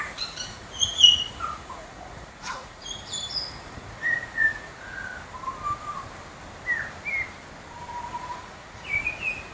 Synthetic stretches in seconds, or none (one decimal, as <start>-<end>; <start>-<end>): 0.0-5.1; 8.1-9.5